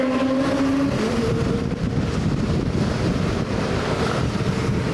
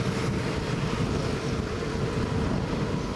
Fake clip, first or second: first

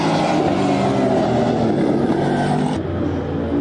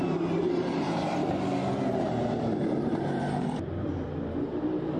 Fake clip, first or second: second